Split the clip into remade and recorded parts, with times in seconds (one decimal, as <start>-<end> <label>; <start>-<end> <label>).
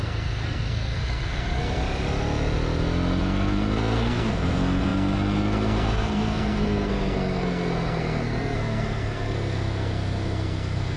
0.0-1.8 remade; 1.8-3.2 recorded; 3.2-11.0 remade